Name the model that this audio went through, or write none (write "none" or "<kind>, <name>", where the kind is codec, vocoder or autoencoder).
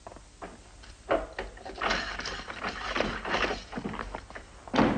none